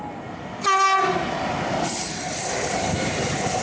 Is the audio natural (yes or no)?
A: yes